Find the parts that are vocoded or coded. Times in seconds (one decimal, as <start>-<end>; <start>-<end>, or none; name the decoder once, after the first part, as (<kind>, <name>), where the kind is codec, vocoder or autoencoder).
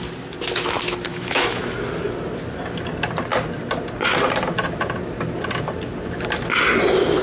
1.1-1.6 (autoencoder, DAC-VAE)